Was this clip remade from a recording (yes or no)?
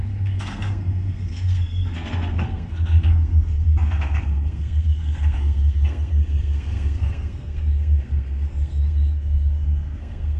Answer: yes